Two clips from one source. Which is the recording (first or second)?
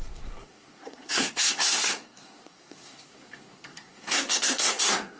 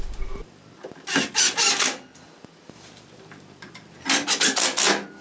second